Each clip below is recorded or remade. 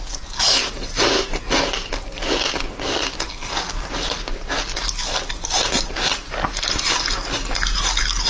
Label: recorded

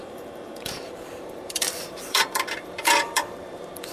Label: remade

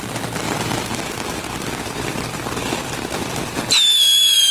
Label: recorded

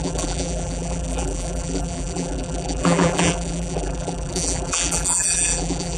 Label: remade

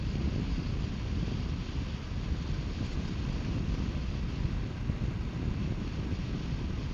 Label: recorded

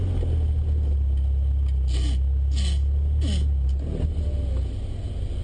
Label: recorded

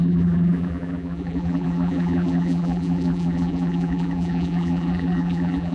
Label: remade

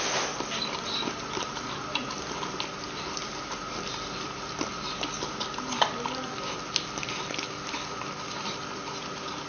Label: recorded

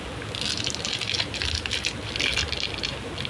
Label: recorded